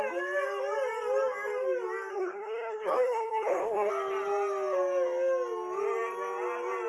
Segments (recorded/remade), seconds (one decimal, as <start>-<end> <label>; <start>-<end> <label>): 0.0-2.1 recorded; 2.1-3.9 remade; 3.9-6.9 recorded